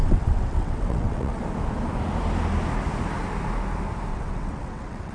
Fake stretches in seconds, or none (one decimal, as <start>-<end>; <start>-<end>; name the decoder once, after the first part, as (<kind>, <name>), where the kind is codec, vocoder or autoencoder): 0.0-1.4 (vocoder, WaveNeXt); 4.1-5.1